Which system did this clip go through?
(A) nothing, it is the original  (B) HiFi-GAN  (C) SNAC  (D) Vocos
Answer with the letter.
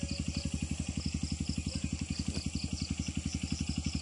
A